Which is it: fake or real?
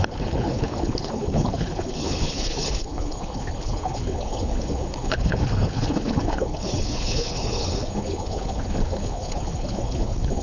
fake